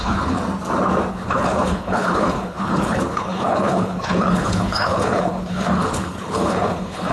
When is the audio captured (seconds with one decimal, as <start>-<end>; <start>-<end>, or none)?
0.4-1.1